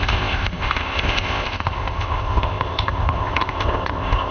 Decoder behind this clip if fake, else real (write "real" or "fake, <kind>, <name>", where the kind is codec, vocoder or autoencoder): fake, codec, ZipCodec